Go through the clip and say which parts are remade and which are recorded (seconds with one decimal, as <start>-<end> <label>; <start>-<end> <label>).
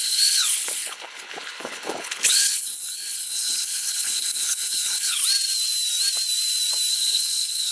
0.0-5.2 remade; 5.2-6.9 recorded; 6.9-7.7 remade